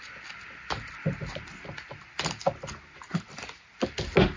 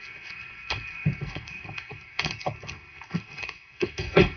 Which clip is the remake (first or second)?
second